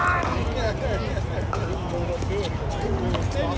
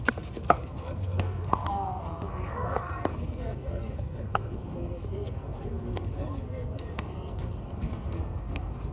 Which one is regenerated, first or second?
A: second